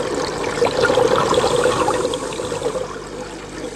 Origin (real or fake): real